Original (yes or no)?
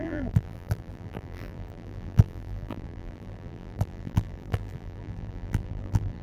no